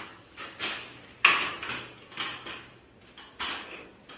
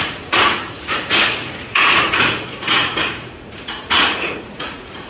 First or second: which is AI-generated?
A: second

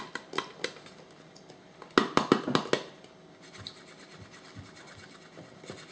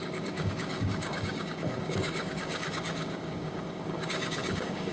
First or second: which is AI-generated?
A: second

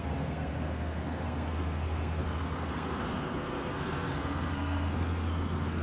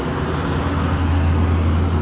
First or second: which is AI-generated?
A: first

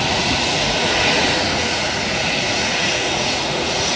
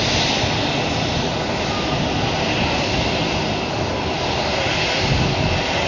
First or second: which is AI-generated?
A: first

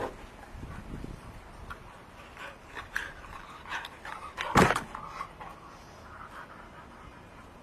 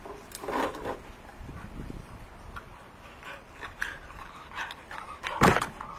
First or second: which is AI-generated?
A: second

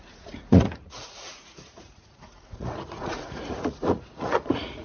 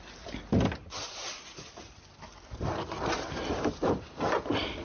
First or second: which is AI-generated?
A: first